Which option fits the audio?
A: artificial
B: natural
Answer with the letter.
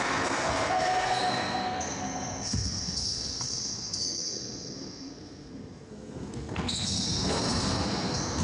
A